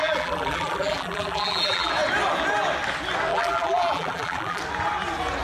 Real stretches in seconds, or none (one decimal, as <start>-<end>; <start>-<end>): 1.9-3.3; 4.6-5.4